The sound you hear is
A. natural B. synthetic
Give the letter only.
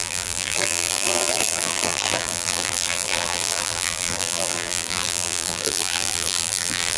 B